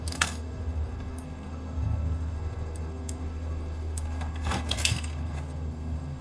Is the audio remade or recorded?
remade